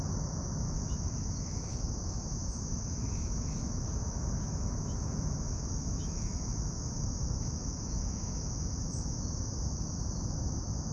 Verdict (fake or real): fake